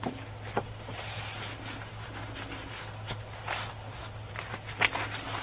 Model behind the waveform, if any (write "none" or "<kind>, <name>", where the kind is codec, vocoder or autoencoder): none